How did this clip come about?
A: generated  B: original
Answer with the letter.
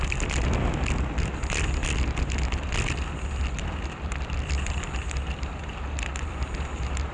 B